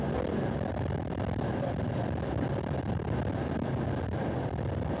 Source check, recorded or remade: recorded